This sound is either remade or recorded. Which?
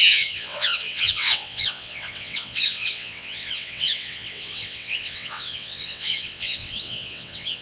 remade